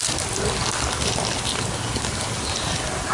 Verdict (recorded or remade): recorded